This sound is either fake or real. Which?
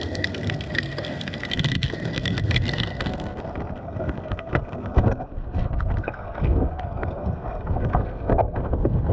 fake